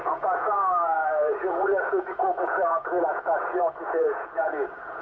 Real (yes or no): no